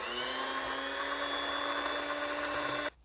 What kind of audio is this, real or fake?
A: real